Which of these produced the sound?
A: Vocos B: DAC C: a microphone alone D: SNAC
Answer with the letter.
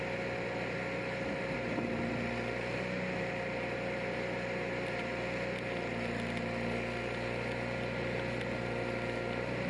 C